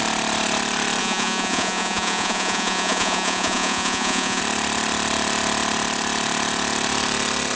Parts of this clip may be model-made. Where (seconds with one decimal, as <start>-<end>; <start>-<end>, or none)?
1.0-4.4